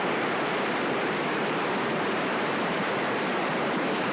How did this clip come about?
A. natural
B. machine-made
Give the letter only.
B